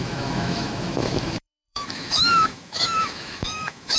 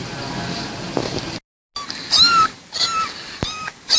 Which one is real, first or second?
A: second